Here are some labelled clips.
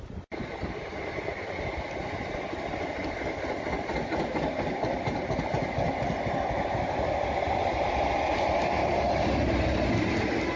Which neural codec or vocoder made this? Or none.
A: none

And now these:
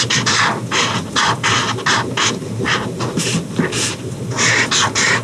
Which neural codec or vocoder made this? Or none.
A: none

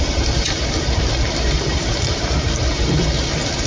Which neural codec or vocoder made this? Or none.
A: vocoder, BigVGAN v2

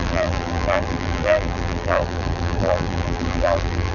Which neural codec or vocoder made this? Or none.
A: vocoder, BigVGAN v2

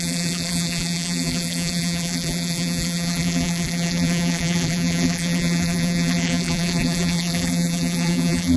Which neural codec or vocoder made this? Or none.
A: vocoder, BigVGAN v2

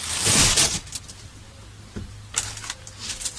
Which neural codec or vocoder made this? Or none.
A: none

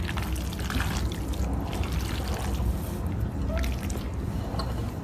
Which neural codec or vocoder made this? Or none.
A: none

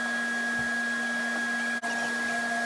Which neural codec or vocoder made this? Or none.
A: none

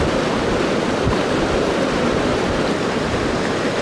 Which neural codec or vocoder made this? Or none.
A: vocoder, BigVGAN v2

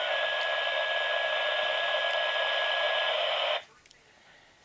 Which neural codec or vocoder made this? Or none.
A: none